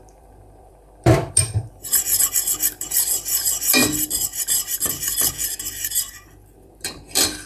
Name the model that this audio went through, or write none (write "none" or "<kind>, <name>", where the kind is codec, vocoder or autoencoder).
vocoder, BigVGAN v2